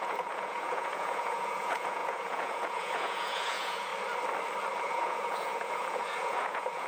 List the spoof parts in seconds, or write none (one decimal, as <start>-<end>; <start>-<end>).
0.0-3.9; 4.8-6.9